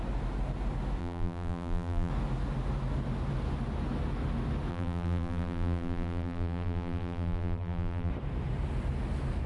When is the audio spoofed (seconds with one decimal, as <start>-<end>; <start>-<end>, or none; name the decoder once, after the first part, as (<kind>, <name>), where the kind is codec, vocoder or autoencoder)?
1.0-2.1 (vocoder, BigVGAN v2); 4.7-8.1